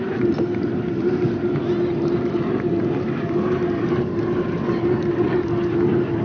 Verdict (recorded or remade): recorded